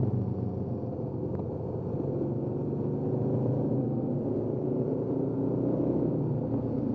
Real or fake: real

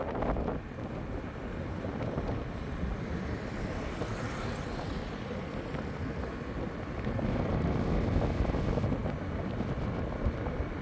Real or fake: real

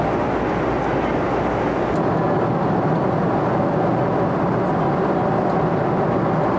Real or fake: real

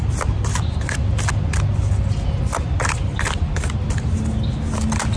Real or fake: real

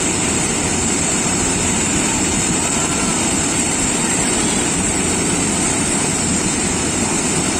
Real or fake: fake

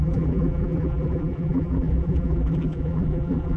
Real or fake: fake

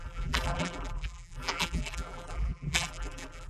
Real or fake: fake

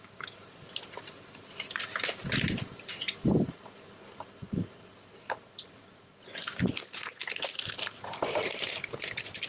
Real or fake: real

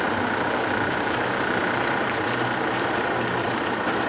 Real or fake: real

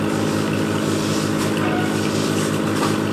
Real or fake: fake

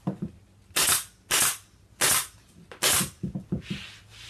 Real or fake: real